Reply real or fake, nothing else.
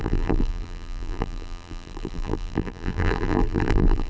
fake